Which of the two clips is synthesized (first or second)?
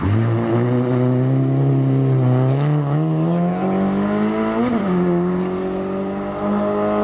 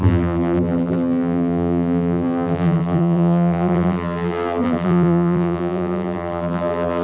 second